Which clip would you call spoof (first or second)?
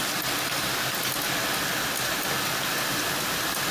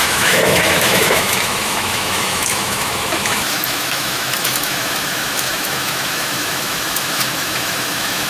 second